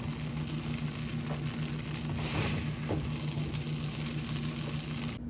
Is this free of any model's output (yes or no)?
yes